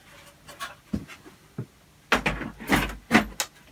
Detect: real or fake real